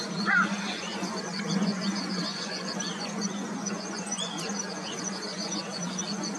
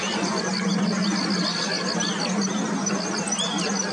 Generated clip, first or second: first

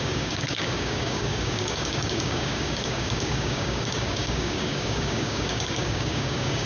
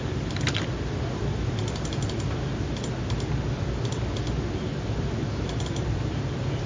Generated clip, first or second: first